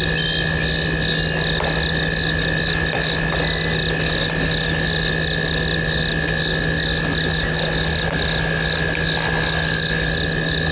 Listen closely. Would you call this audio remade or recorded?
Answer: recorded